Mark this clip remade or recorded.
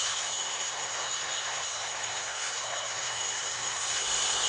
remade